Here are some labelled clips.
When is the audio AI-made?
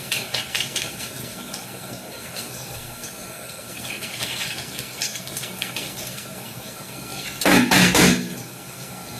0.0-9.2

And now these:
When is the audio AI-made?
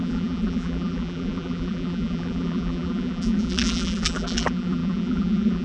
0.0-5.6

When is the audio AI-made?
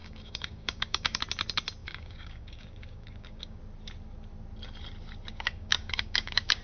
0.0-1.2; 1.8-3.6; 5.3-6.6